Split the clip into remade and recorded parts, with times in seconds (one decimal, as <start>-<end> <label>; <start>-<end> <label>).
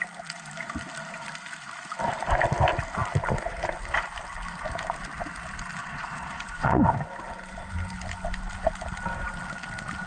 0.0-5.8 recorded; 5.8-6.8 remade; 6.8-10.1 recorded